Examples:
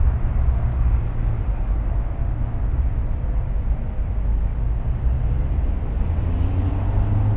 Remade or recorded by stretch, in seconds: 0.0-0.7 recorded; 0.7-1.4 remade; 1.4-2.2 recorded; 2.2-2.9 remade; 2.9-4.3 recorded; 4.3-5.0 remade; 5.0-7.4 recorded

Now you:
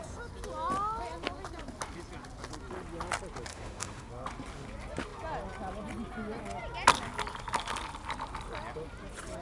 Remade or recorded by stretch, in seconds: 0.0-3.5 recorded; 3.5-4.1 remade; 4.1-9.4 recorded

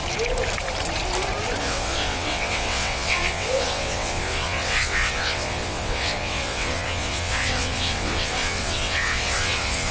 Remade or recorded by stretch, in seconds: 0.0-1.6 recorded; 1.6-9.9 remade

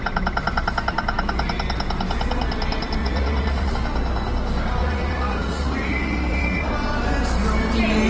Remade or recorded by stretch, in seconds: 0.0-3.0 recorded; 3.0-3.7 remade; 3.7-4.8 recorded; 4.8-6.7 remade; 6.7-8.1 recorded